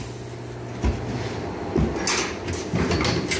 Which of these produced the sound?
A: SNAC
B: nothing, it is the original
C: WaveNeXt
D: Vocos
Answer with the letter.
B